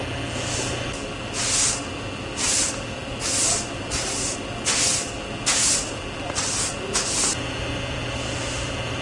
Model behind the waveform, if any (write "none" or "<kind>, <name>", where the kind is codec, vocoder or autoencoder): none